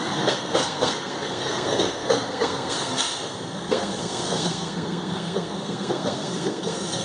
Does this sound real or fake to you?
fake